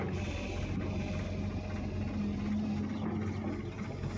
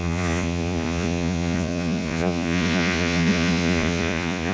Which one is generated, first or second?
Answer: second